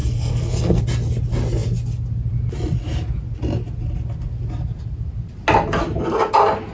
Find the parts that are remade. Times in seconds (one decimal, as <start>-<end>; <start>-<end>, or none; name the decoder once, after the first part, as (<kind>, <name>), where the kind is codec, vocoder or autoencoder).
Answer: 0.0-0.8 (codec, SNAC)